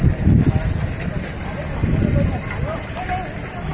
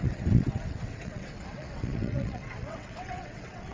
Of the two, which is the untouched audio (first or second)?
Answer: first